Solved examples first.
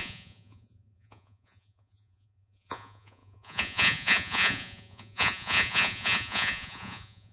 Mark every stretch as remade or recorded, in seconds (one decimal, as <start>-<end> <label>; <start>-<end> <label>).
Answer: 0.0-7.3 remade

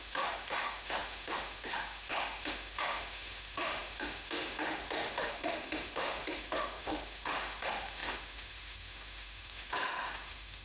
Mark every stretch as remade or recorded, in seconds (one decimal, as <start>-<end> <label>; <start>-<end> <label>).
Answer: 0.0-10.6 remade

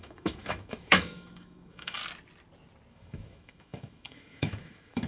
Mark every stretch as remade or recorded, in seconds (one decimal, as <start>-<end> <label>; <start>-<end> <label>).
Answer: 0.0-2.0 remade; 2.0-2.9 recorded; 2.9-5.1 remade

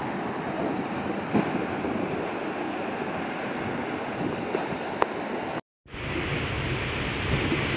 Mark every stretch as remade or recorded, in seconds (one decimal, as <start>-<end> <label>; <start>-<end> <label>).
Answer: 0.0-7.8 recorded